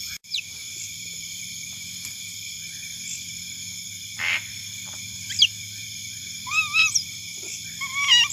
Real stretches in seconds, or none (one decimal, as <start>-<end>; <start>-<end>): none